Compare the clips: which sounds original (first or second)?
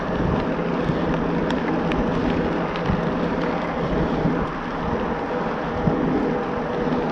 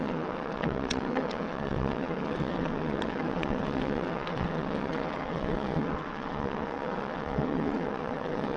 first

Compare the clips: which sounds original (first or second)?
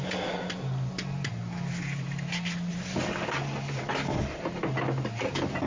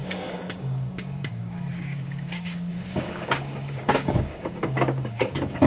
first